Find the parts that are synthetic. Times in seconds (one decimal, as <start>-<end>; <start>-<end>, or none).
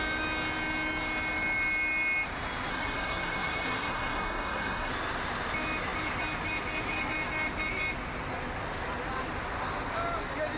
2.7-4.9